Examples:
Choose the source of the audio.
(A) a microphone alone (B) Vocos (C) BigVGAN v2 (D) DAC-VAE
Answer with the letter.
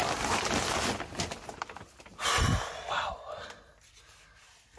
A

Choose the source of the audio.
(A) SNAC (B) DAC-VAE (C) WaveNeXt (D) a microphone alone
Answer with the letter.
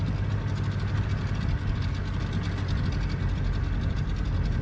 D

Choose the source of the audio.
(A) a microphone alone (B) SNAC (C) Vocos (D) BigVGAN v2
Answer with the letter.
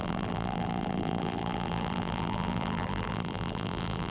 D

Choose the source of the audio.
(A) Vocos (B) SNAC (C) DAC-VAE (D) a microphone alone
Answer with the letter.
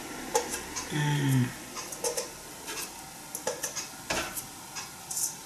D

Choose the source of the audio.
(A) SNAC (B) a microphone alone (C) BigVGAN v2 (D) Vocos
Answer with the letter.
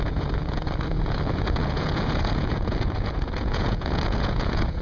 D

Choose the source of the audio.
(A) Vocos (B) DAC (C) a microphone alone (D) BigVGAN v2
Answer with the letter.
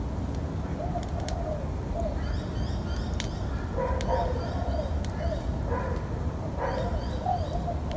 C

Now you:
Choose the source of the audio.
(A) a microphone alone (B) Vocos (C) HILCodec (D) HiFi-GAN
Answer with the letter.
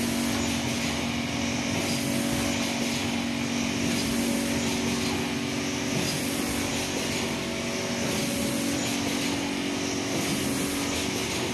A